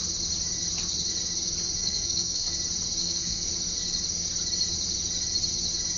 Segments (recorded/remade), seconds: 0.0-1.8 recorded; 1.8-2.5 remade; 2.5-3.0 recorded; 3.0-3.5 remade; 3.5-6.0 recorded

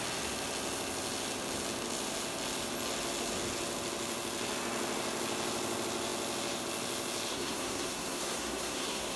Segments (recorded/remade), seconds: 0.0-7.3 recorded; 7.3-9.2 remade

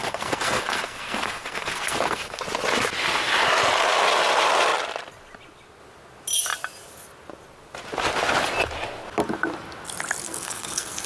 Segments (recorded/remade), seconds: 0.0-2.4 remade; 2.4-10.2 recorded; 10.2-11.1 remade